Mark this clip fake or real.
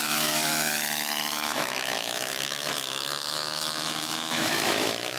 fake